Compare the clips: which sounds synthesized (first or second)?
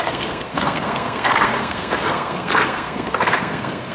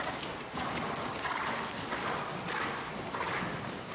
first